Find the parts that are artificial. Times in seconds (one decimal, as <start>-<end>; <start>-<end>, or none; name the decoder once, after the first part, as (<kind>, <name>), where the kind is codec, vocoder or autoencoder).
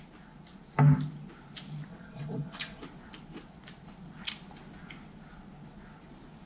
1.9-2.8 (vocoder, WaveNeXt)